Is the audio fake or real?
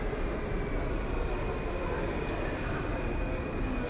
real